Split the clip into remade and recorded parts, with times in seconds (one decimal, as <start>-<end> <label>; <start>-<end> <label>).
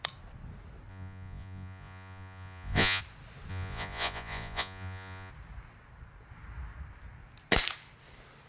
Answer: 0.0-0.9 recorded; 0.9-3.0 remade; 3.0-3.5 recorded; 3.5-5.3 remade; 5.3-8.5 recorded